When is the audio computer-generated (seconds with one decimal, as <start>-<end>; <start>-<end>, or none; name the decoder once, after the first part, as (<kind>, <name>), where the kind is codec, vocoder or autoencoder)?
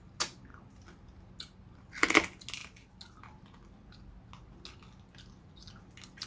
none